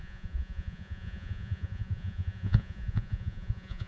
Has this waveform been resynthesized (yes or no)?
yes